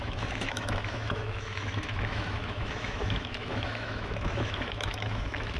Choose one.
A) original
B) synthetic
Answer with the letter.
B